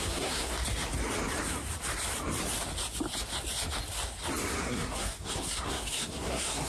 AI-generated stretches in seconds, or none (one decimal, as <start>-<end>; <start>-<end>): 0.0-0.6; 4.6-6.7